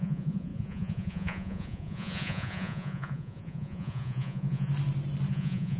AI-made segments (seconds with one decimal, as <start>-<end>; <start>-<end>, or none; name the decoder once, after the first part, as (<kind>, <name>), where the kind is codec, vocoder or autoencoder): 0.0-4.7 (vocoder, Vocos); 5.3-5.8